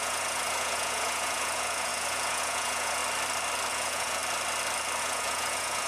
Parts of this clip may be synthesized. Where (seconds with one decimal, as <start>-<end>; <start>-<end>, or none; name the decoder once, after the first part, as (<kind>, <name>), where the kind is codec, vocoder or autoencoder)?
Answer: 0.0-3.0 (vocoder, Vocos); 3.7-4.2; 5.0-5.9